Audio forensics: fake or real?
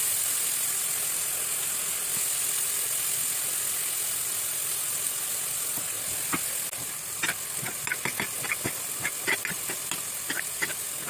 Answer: real